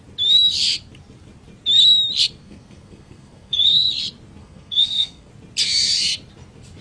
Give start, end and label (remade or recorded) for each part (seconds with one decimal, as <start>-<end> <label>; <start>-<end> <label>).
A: 0.0-2.4 recorded; 2.4-3.9 remade; 3.9-4.4 recorded; 4.4-5.3 remade; 5.3-6.8 recorded